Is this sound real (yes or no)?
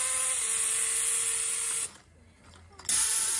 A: yes